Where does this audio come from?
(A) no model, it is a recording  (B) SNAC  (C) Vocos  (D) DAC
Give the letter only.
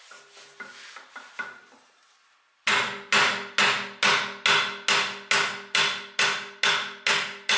A